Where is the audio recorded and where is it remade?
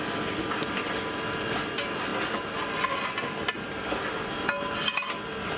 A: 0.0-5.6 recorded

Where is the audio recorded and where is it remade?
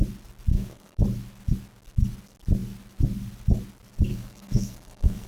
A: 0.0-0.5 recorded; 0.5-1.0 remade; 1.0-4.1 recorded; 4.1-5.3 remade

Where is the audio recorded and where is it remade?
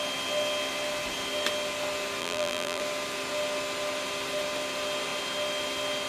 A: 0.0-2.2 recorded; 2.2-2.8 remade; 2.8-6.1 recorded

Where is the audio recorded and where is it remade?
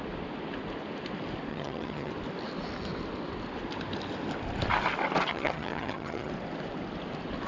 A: 0.0-1.5 recorded; 1.5-2.1 remade; 2.1-5.3 recorded; 5.3-6.3 remade; 6.3-7.5 recorded